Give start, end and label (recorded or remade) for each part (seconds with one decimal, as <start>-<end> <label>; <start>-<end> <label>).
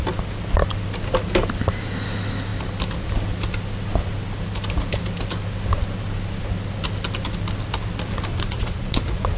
0.0-8.3 recorded; 8.3-9.4 remade